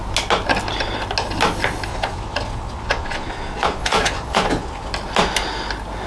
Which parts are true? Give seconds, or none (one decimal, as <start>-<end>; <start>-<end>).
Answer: 0.0-1.9; 4.9-6.1